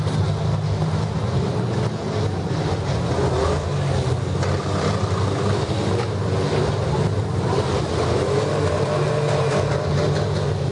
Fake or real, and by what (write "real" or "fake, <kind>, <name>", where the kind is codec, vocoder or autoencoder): real